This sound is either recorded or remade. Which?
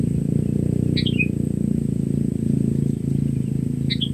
recorded